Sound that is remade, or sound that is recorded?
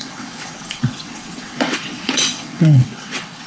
remade